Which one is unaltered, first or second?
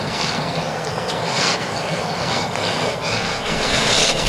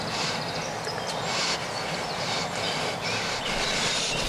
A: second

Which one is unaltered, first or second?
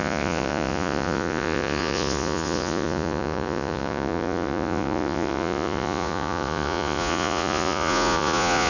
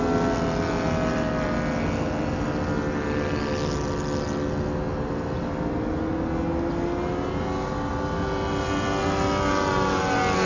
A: second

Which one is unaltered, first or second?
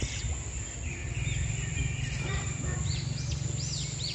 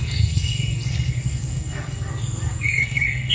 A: first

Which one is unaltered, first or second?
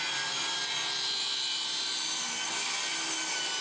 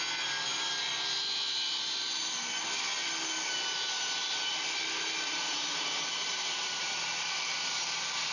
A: first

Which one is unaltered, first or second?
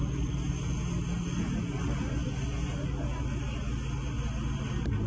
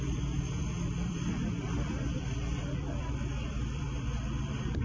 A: first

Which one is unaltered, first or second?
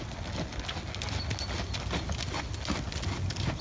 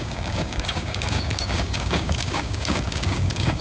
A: first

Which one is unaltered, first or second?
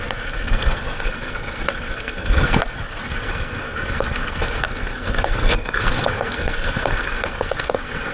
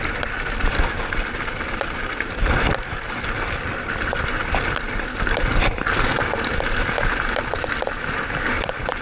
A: second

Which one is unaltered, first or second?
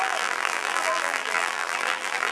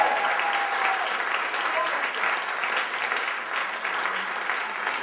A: second